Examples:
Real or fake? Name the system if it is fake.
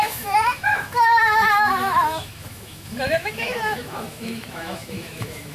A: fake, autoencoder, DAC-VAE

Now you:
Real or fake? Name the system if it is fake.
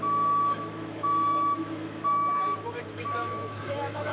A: fake, autoencoder, DAC-VAE